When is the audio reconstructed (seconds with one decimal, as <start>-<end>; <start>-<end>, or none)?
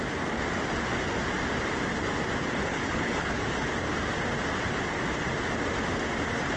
2.7-3.4